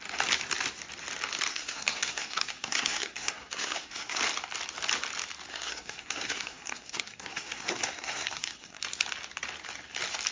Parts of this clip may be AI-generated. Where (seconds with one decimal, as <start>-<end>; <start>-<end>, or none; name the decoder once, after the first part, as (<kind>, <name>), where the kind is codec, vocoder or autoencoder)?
1.5-4.2 (codec, SNAC); 5.5-8.8